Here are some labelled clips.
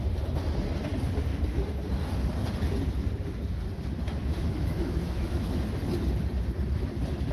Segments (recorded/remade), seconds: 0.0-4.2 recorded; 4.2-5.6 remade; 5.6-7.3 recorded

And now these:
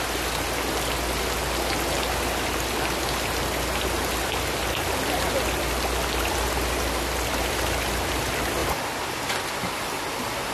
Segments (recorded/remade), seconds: 0.0-10.5 recorded

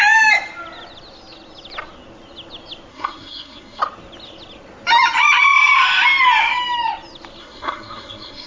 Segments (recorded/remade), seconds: 0.0-2.9 recorded; 2.9-3.8 remade; 3.8-7.4 recorded; 7.4-8.5 remade

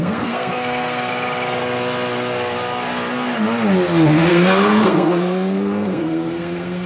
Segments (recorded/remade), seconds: 0.0-1.1 remade; 1.1-4.3 recorded; 4.3-6.9 remade

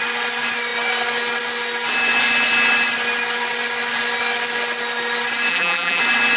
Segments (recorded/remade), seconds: 0.0-5.5 recorded; 5.5-6.0 remade; 6.0-6.4 recorded